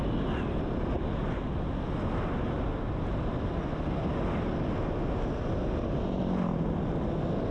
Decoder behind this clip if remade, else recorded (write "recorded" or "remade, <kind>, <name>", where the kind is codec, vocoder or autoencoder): recorded